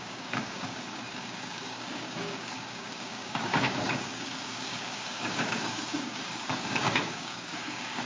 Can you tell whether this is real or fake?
fake